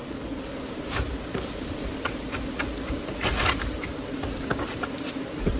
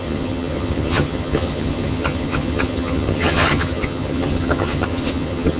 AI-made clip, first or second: second